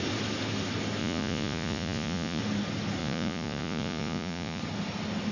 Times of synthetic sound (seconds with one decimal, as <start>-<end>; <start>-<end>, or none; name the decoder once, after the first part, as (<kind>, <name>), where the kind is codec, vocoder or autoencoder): 1.0-2.4 (vocoder, Vocos); 3.0-4.6